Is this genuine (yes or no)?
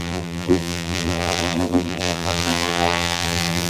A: no